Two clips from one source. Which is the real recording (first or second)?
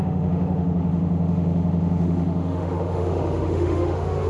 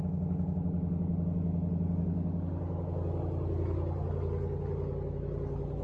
second